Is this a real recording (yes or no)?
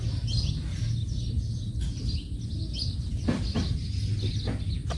yes